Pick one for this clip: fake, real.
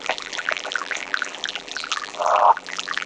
fake